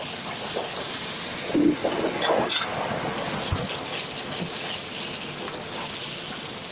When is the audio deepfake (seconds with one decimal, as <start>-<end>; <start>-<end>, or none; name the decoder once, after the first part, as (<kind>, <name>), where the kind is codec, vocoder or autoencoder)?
none